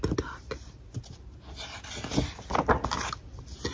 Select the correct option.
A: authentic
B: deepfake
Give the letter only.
A